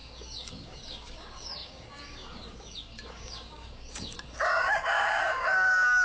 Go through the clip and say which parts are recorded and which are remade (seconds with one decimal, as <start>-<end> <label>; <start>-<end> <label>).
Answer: 0.0-6.0 remade